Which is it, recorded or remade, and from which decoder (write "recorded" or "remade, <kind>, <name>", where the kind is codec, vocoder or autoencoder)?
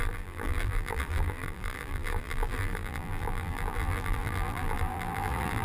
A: remade, vocoder, BigVGAN v2